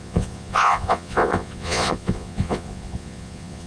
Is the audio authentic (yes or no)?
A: no